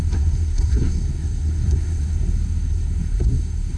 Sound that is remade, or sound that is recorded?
remade